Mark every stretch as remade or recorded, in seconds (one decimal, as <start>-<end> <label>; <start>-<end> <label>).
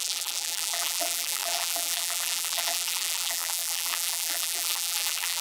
0.0-5.4 remade